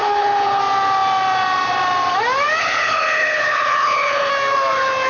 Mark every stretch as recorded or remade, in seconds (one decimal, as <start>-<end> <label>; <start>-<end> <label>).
0.0-0.6 remade; 0.6-2.6 recorded; 2.6-4.3 remade; 4.3-5.1 recorded